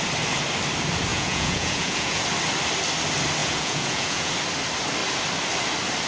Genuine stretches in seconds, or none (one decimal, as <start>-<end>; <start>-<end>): 0.0-1.1; 2.2-3.4; 4.3-6.1